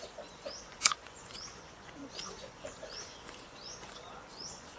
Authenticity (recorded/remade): remade